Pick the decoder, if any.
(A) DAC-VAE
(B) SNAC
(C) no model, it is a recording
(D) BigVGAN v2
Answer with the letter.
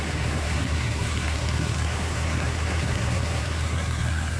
B